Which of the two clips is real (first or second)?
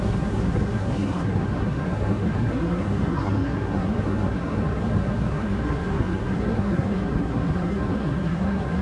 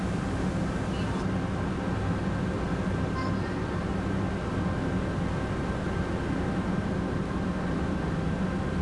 second